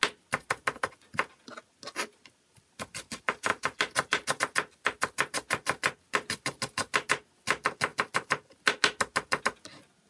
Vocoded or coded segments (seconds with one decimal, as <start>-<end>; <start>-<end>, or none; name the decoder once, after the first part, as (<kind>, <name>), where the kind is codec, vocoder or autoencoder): 3.5-4.4 (vocoder, BigVGAN v2)